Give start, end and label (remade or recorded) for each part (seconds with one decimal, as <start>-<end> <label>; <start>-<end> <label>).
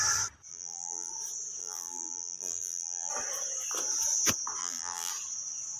0.0-0.5 recorded; 0.5-1.1 remade; 1.1-1.6 recorded; 1.6-3.1 remade; 3.1-4.6 recorded; 4.6-5.1 remade; 5.1-5.8 recorded